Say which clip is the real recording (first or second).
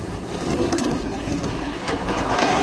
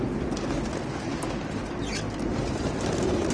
second